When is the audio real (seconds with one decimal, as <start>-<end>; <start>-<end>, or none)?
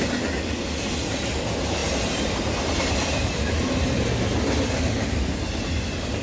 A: 0.0-6.2